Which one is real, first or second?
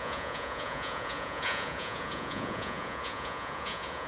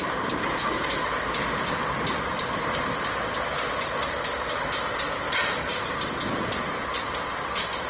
second